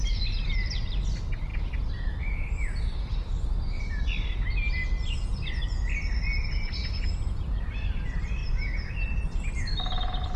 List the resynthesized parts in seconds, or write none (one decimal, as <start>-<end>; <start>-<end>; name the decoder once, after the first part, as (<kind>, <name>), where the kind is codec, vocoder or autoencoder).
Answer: none